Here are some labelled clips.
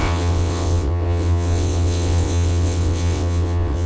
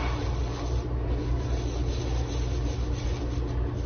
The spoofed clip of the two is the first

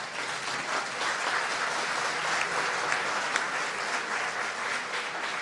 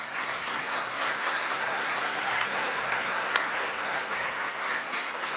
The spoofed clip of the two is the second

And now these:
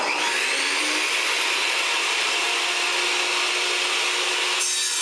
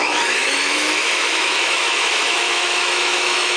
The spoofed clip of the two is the second